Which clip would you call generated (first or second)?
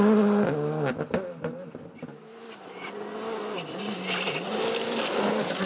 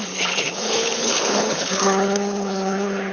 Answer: second